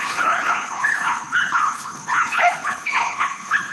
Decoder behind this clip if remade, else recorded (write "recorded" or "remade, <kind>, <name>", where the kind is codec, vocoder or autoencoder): remade, codec, HILCodec